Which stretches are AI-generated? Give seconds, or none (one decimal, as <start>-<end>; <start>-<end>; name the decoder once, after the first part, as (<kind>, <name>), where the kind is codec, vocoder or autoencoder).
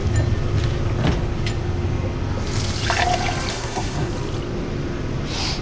3.5-4.1 (codec, SNAC)